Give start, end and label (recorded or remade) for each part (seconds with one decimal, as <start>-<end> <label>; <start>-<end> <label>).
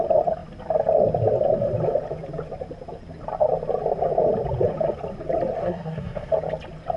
0.0-5.6 recorded; 5.6-6.3 remade; 6.3-7.0 recorded